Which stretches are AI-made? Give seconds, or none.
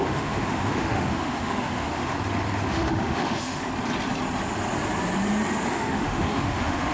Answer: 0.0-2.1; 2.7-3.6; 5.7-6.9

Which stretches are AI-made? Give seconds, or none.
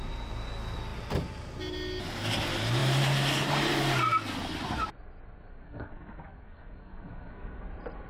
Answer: 5.5-7.6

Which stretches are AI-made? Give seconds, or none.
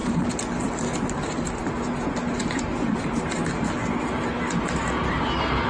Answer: none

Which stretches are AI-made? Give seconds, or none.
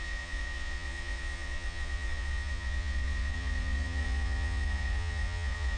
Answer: 0.0-5.8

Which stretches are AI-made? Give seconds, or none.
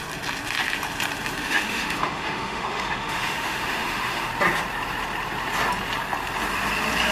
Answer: 1.4-4.3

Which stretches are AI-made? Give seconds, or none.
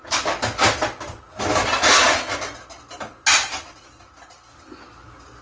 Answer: none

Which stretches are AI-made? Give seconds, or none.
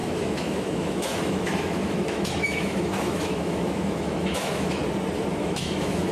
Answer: 0.0-4.8; 5.3-6.1